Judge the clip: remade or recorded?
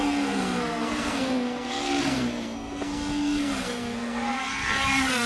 remade